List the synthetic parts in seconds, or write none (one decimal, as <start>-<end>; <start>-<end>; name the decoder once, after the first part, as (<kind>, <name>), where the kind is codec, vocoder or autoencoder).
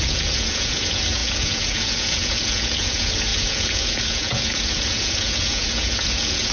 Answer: 0.0-6.5 (vocoder, Vocos)